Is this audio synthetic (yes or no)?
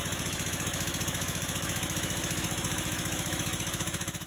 yes